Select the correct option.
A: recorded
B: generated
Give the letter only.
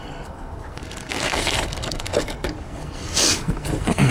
B